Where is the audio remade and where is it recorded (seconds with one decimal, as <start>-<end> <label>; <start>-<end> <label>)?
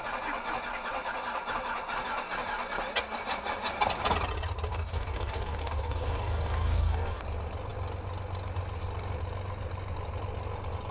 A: 0.0-4.7 recorded; 4.7-7.2 remade; 7.2-10.9 recorded